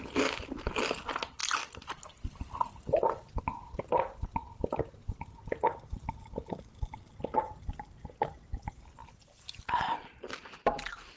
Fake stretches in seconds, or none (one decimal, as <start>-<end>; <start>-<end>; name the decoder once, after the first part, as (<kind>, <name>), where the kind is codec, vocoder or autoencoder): none